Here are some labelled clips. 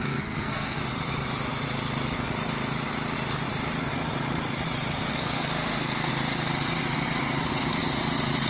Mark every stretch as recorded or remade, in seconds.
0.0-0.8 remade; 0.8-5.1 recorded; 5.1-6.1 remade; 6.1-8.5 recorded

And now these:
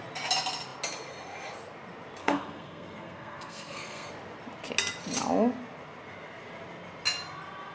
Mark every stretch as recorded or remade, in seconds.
0.0-2.2 recorded; 2.2-4.1 remade; 4.1-7.7 recorded

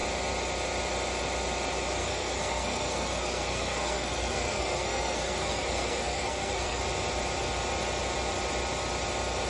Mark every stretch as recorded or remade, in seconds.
0.0-2.0 recorded; 2.0-6.8 remade; 6.8-9.5 recorded

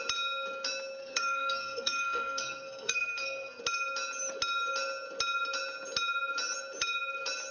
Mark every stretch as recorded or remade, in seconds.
0.0-1.0 recorded; 1.0-3.6 remade; 3.6-7.5 recorded

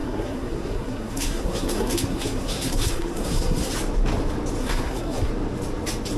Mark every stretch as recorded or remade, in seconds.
0.0-3.7 remade; 3.7-4.6 recorded; 4.6-5.3 remade; 5.3-6.2 recorded